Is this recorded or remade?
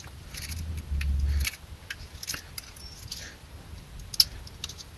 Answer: recorded